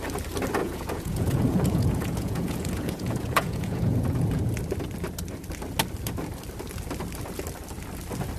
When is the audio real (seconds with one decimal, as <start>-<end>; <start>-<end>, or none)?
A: 0.0-0.6; 4.6-8.4